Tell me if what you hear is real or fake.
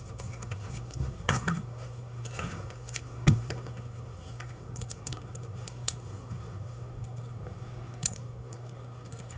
fake